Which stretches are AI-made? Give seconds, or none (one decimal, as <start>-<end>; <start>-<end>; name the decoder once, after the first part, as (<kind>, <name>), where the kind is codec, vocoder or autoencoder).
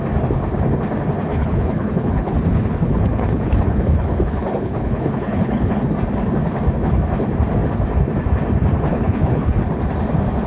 1.3-5.8 (codec, HILCodec); 8.9-9.6